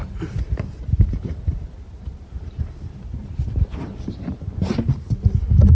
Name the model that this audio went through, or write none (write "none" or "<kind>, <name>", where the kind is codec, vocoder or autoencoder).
none